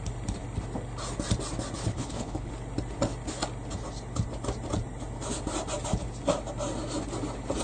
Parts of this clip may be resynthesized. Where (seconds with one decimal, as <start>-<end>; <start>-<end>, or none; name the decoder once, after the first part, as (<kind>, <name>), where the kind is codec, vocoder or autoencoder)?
1.9-2.5 (codec, HILCodec)